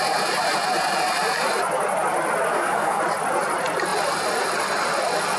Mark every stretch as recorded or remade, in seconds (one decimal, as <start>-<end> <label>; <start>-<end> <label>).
0.0-2.5 recorded; 2.5-3.0 remade; 3.0-5.4 recorded